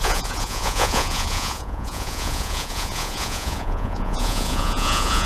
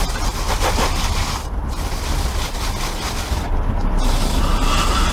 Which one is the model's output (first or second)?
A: first